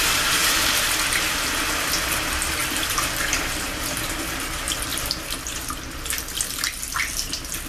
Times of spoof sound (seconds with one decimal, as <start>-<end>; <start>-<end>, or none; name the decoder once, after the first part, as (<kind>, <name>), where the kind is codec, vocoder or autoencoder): 0.4-1.2 (vocoder, BigVGAN v2); 2.6-3.5